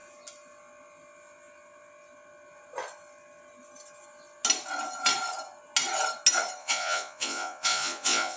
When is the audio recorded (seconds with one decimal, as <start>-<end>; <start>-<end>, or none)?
0.0-6.6